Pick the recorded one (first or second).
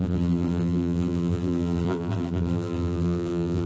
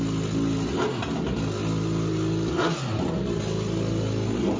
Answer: second